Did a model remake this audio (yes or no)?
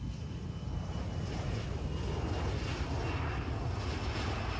no